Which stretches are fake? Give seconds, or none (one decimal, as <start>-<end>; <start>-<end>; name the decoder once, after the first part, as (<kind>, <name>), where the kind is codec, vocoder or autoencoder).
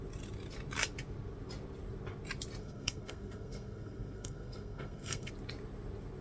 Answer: 2.6-5.3 (codec, SNAC)